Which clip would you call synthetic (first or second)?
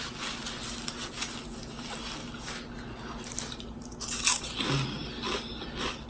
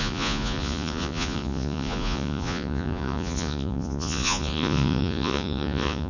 second